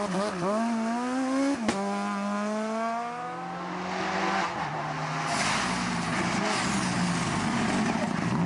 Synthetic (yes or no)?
no